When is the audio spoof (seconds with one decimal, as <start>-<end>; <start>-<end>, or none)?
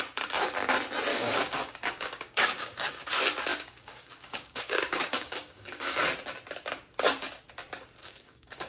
1.1-3.1; 3.5-6.0; 8.0-8.7